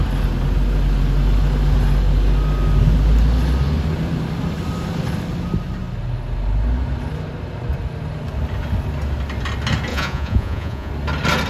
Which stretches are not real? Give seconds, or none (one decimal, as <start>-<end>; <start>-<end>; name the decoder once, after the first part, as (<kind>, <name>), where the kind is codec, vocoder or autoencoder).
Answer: 9.9-10.9 (vocoder, Vocos)